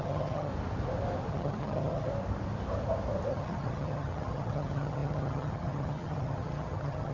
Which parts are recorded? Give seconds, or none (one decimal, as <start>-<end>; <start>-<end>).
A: 0.5-1.3; 2.1-3.3